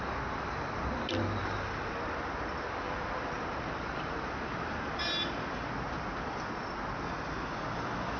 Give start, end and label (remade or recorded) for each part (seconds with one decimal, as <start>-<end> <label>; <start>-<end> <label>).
0.0-1.4 recorded; 1.4-5.7 remade; 5.7-8.2 recorded